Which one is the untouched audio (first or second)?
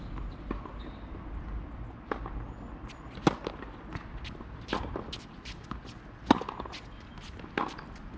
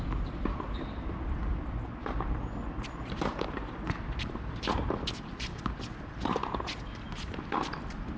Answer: first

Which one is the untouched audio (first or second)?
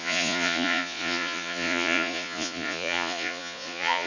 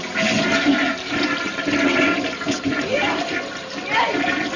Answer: second